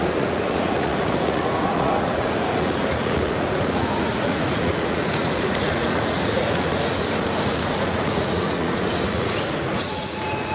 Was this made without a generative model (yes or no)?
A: no